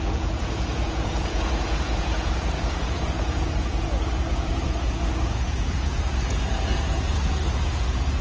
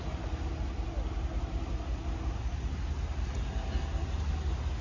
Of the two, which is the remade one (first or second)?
first